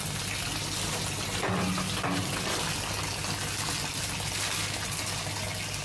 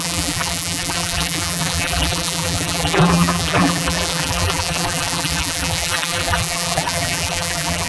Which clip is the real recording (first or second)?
first